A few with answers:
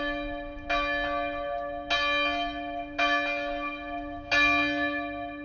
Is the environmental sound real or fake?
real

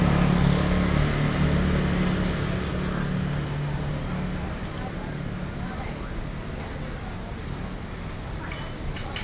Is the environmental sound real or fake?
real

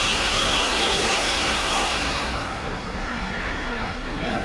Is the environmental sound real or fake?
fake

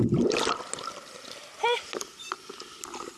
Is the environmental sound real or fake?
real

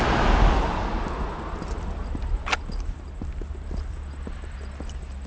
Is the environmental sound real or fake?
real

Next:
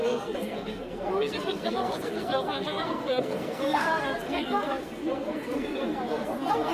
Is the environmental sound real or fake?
fake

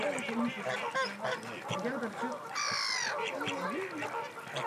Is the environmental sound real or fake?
real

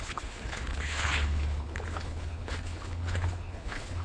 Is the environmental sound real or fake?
fake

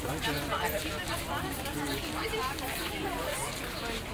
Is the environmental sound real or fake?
real